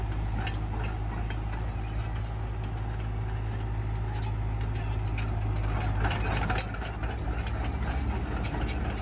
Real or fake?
real